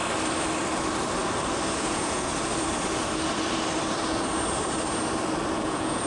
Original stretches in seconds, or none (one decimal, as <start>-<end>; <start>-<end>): 0.0-1.8; 2.3-5.6

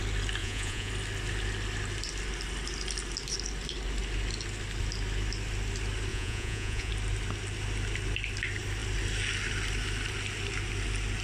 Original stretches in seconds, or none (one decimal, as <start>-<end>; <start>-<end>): 0.0-0.4; 0.9-6.1; 6.9-11.2

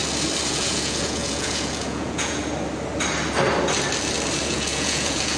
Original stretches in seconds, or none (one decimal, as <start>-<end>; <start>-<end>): 0.0-0.5; 2.4-4.4

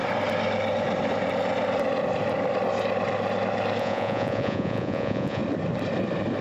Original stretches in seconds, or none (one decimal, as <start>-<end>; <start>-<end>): 0.0-3.8; 5.4-6.4

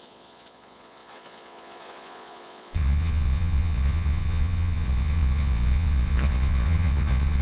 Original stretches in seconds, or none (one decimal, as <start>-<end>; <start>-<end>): none

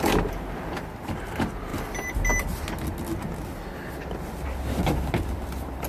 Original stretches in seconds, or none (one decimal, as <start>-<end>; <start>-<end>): 0.0-5.9